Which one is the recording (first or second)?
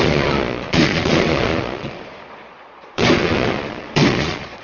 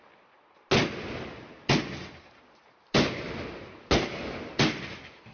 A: second